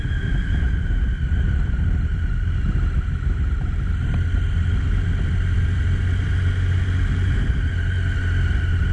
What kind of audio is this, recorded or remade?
recorded